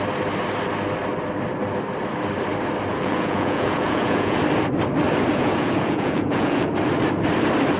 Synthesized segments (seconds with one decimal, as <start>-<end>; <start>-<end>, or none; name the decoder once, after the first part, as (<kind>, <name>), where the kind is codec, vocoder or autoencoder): 2.9-4.4 (vocoder, Vocos); 5.3-6.7